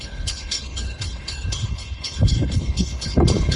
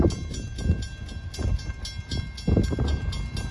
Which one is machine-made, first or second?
first